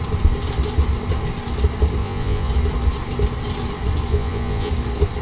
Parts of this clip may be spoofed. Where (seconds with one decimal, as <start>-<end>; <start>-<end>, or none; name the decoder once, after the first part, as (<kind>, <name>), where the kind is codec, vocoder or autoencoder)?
2.0-2.5 (vocoder, Vocos); 4.1-4.7